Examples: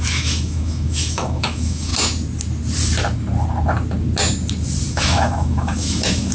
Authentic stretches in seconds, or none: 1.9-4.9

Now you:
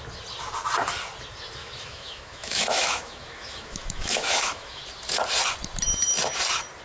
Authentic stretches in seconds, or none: 0.0-1.6; 4.8-6.8

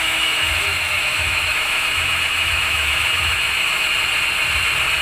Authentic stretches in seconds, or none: 3.9-5.0

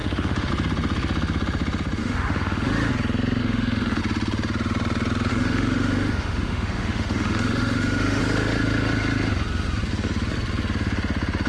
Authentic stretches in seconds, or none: 0.5-2.0; 2.9-3.4; 4.0-5.3; 8.2-11.5

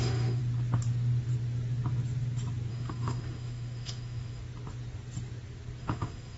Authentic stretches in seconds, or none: 0.4-2.7; 4.4-5.8

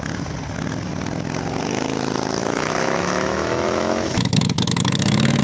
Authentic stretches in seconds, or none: 0.0-2.4

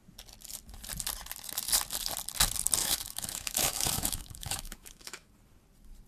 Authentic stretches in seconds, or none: 0.0-2.8; 5.3-6.1

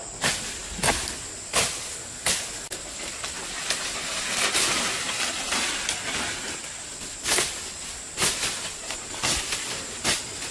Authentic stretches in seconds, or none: 0.0-10.5